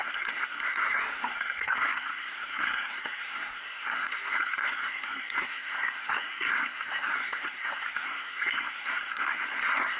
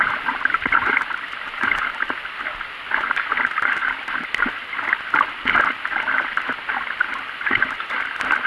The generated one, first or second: first